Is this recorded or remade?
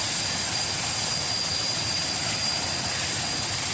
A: recorded